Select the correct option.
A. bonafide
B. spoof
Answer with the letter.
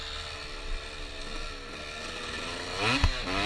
A